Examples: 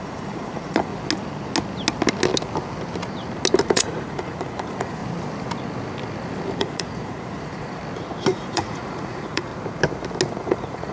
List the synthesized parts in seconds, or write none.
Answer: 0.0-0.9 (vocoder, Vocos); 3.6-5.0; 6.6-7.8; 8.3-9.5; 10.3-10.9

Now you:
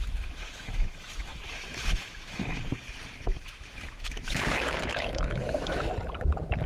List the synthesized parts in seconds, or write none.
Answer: 0.0-5.9 (autoencoder, DAC-VAE)

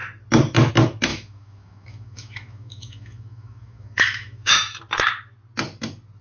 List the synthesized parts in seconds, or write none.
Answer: 1.1-4.8 (autoencoder, DAC-VAE)

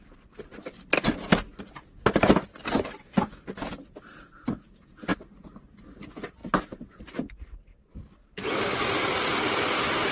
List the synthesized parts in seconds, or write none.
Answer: 5.1-6.0 (vocoder, BigVGAN v2); 6.4-8.1